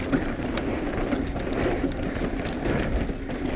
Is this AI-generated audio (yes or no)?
no